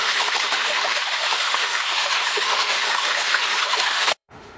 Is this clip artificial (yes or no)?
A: yes